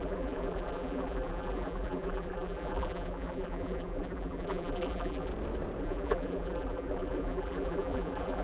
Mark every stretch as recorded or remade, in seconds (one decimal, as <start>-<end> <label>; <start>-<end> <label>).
0.0-5.3 remade; 5.3-5.8 recorded; 5.8-8.4 remade